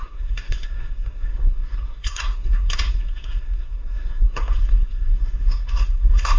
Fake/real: fake